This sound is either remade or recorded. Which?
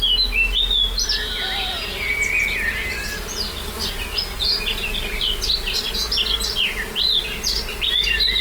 recorded